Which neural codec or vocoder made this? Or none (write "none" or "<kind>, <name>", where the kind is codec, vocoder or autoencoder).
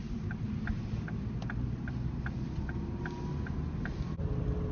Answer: none